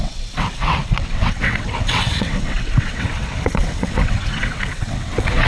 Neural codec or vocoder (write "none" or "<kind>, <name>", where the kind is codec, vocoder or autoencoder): vocoder, WaveNeXt